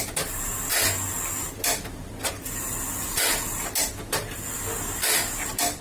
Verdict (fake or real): real